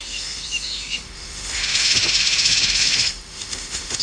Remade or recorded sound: remade